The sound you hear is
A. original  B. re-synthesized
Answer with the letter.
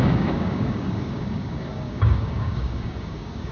B